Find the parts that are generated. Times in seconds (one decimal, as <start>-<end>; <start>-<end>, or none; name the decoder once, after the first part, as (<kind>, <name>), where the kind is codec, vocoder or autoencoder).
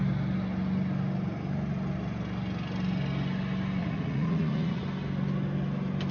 3.8-4.8 (vocoder, Vocos)